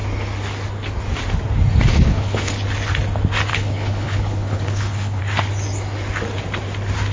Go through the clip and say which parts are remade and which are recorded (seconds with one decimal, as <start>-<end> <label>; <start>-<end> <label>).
0.0-1.9 recorded; 1.9-2.5 remade; 2.5-3.5 recorded; 3.5-5.2 remade; 5.2-7.1 recorded